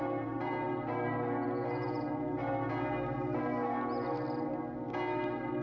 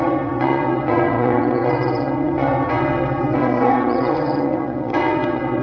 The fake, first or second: second